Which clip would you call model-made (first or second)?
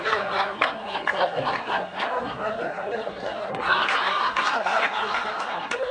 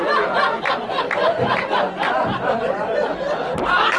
first